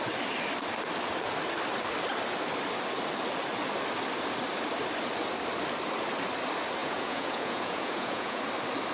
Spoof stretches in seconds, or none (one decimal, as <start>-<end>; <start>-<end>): 6.8-8.4